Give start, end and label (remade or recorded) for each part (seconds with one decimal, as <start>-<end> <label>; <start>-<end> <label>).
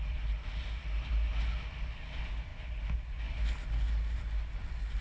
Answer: 0.0-5.0 recorded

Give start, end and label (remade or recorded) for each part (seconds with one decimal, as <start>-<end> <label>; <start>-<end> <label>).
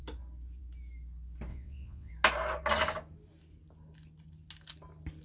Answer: 0.0-1.5 recorded; 1.5-2.1 remade; 2.1-5.2 recorded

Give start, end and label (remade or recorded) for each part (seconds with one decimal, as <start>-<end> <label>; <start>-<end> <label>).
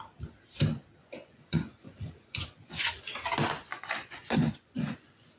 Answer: 0.0-1.0 recorded; 1.0-2.9 remade; 2.9-3.7 recorded; 3.7-5.4 remade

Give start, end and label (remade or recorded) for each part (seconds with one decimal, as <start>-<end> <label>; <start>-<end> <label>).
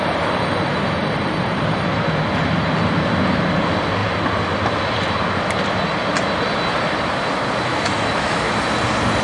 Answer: 0.0-7.7 recorded; 7.7-8.5 remade; 8.5-9.2 recorded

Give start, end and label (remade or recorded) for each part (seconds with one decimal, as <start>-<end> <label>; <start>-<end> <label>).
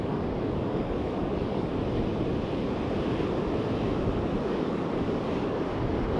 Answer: 0.0-1.7 remade; 1.7-4.4 recorded; 4.4-6.2 remade